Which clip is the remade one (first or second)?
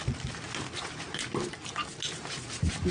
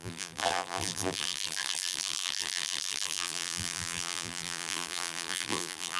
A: second